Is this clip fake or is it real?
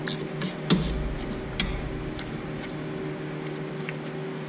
real